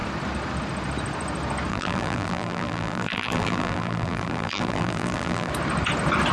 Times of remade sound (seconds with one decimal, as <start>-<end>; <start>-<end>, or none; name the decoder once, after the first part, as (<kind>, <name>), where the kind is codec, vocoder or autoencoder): 1.7-5.5 (vocoder, BigVGAN v2)